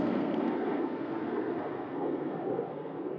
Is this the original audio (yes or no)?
no